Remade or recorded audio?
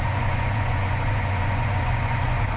remade